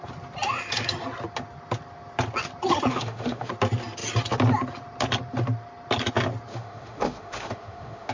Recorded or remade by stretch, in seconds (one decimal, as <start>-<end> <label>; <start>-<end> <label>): 0.0-2.9 recorded; 2.9-3.5 remade; 3.5-6.5 recorded; 6.5-8.1 remade

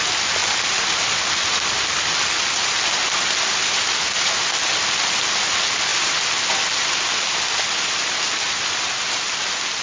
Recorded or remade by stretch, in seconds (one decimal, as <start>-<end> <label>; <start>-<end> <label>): 0.0-9.8 recorded

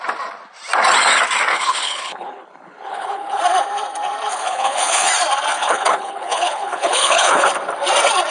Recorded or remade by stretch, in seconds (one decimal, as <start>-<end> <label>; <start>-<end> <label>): 0.0-1.5 recorded; 1.5-3.4 remade; 3.4-4.3 recorded; 4.3-5.1 remade; 5.1-5.5 recorded; 5.5-7.5 remade; 7.5-8.3 recorded

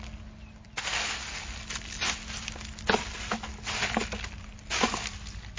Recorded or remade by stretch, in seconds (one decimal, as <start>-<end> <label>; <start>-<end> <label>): 0.0-5.6 recorded

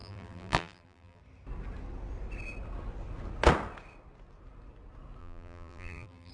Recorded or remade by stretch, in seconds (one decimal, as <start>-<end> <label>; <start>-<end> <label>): 0.0-1.2 remade; 1.2-5.2 recorded; 5.2-6.3 remade